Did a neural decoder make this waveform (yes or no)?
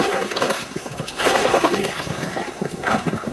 yes